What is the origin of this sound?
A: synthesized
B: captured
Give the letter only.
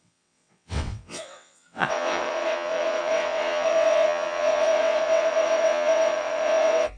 A